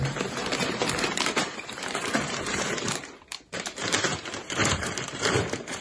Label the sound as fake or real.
fake